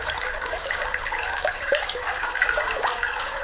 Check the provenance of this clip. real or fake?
fake